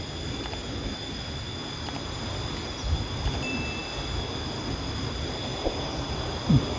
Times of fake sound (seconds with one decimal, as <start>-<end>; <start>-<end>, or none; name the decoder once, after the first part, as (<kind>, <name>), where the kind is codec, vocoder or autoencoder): none